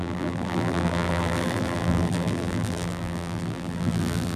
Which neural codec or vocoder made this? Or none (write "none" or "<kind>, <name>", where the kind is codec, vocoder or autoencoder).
vocoder, BigVGAN v2